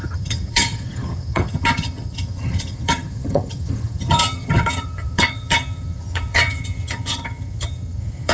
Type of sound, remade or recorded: remade